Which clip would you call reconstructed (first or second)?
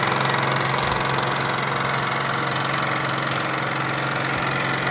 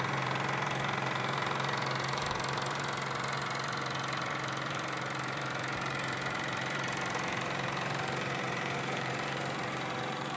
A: second